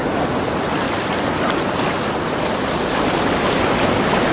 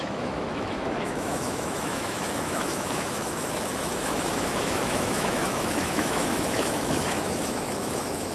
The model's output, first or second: second